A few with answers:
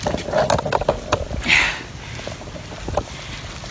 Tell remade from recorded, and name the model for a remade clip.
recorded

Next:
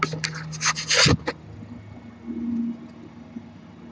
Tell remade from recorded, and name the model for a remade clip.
recorded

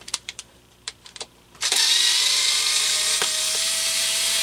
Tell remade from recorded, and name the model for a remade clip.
remade, vocoder, BigVGAN v2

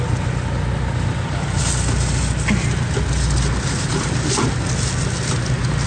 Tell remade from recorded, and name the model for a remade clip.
recorded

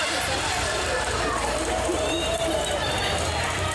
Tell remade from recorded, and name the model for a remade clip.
remade, vocoder, BigVGAN v2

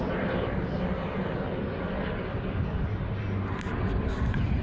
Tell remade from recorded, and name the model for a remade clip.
remade, vocoder, BigVGAN v2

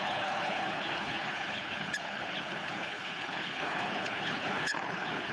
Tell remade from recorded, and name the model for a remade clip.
remade, codec, HILCodec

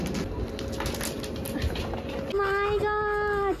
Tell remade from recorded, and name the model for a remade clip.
recorded